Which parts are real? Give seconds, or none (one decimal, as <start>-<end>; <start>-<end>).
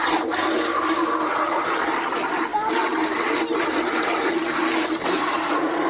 0.0-2.5; 3.4-5.9